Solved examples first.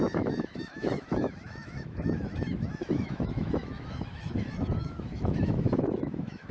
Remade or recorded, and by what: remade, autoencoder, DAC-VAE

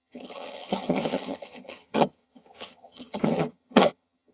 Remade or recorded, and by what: remade, vocoder, HiFi-GAN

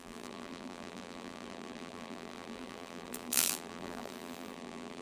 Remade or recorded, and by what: remade, vocoder, BigVGAN v2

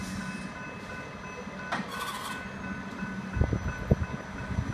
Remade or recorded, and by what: recorded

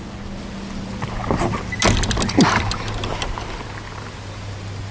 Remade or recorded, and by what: recorded